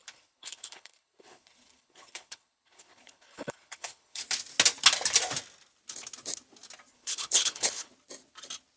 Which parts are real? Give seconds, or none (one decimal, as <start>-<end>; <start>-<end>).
4.2-6.9; 7.9-8.8